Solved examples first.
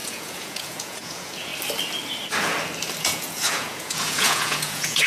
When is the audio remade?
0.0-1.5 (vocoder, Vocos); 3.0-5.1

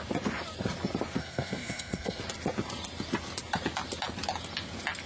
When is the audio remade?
1.2-2.2 (codec, SNAC)

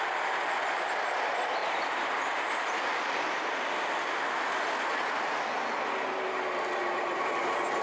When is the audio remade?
1.6-3.0 (vocoder, BigVGAN v2)

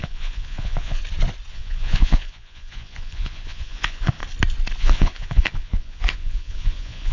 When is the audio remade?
0.0-1.0 (vocoder, Vocos); 1.5-4.2; 4.8-7.1

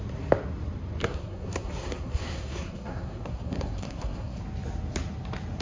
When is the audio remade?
1.0-4.4 (codec, SNAC)